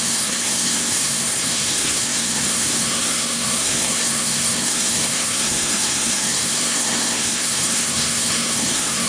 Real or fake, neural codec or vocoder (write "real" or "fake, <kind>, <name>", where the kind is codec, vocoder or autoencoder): fake, codec, SNAC